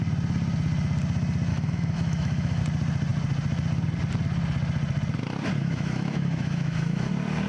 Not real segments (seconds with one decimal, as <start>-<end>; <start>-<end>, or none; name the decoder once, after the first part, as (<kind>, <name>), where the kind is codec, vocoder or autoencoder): 1.5-2.6 (autoencoder, DAC-VAE); 5.6-7.1